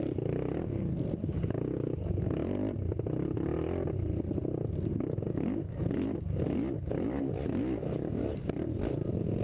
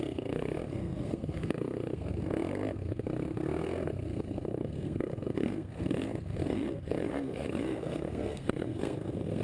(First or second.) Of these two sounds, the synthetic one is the second